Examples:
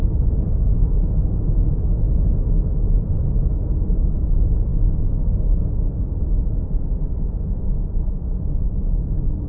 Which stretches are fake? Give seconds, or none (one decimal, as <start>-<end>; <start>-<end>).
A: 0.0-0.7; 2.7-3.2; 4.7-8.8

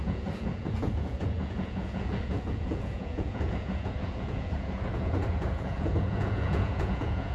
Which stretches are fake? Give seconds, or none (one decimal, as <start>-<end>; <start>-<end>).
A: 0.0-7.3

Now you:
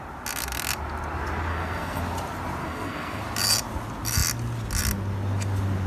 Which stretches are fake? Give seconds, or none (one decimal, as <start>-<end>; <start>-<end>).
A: 1.5-2.0; 2.6-3.2